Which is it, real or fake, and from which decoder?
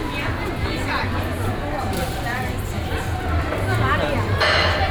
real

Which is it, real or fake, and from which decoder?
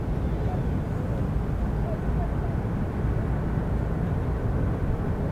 real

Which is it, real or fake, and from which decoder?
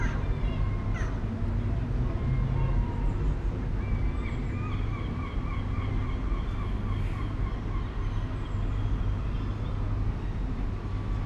real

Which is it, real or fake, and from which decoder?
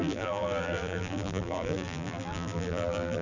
fake, vocoder, BigVGAN v2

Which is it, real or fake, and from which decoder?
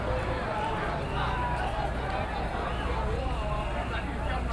real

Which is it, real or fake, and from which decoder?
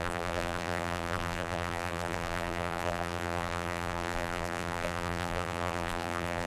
fake, vocoder, BigVGAN v2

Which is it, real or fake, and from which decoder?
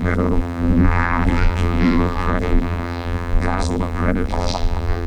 fake, vocoder, BigVGAN v2